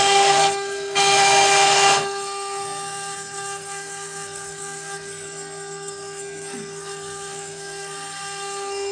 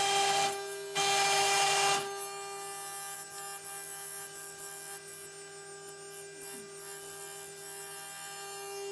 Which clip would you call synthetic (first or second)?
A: first